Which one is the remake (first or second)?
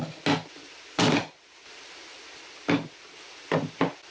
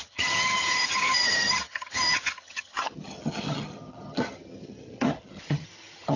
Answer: second